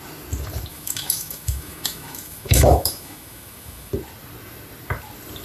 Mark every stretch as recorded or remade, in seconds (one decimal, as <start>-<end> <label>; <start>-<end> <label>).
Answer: 0.0-0.7 recorded; 0.7-3.9 remade; 3.9-5.4 recorded